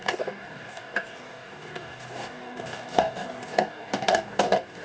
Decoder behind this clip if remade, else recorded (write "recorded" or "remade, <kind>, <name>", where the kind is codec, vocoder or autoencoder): remade, codec, DAC